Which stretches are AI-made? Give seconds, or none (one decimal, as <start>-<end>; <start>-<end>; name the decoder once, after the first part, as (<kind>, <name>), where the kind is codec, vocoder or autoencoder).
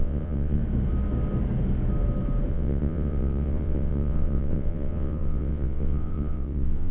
0.0-0.6 (vocoder, WaveNeXt); 2.5-6.9